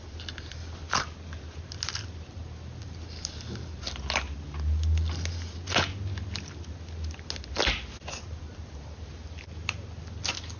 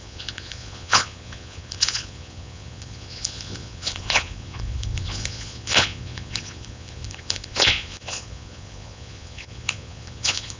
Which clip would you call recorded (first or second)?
first